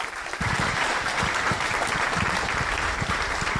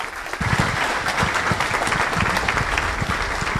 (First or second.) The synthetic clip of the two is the first